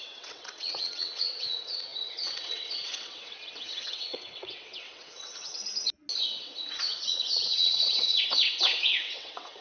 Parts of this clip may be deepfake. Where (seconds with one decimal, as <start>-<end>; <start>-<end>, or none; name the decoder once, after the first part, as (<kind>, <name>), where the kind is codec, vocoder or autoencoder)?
0.0-5.6 (vocoder, WaveNeXt); 6.2-9.6